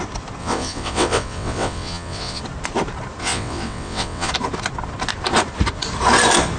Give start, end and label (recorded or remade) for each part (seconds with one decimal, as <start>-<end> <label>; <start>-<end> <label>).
0.0-0.4 recorded; 0.4-2.4 remade; 2.4-3.2 recorded; 3.2-4.3 remade; 4.3-6.6 recorded